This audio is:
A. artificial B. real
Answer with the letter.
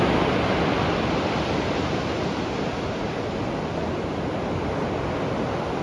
B